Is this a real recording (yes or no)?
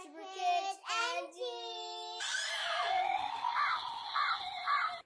yes